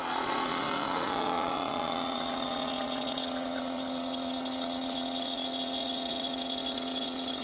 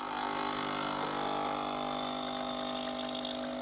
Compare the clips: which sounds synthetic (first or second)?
first